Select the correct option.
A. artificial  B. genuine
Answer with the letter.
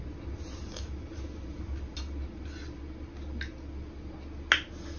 B